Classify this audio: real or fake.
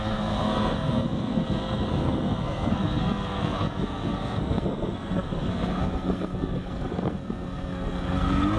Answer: fake